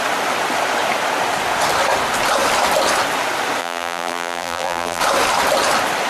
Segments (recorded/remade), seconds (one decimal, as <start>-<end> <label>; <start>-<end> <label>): 0.0-3.6 recorded; 3.6-5.0 remade; 5.0-6.1 recorded